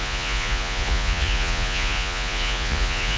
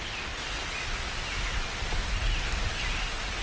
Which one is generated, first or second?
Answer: first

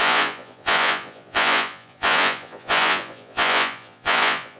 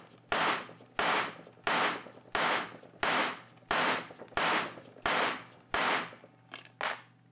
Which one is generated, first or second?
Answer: first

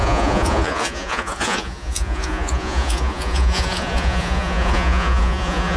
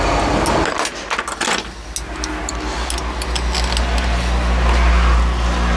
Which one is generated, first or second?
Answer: first